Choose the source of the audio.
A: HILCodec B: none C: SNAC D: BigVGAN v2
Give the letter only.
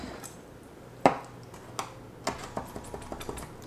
B